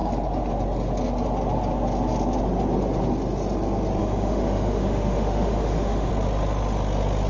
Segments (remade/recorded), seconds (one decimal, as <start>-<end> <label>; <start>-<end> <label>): 0.0-4.0 recorded; 4.0-6.1 remade; 6.1-7.3 recorded